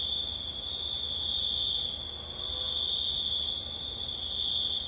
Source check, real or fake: real